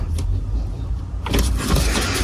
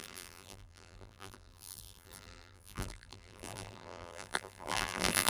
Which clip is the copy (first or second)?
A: second